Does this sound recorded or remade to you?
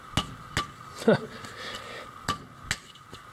recorded